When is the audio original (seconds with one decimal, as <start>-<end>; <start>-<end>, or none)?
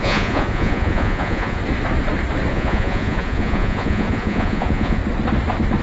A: 1.6-2.5; 5.0-5.8